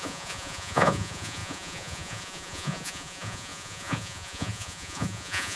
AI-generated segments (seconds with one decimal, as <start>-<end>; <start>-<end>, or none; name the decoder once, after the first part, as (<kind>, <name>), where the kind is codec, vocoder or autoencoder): 0.0-5.6 (vocoder, Vocos)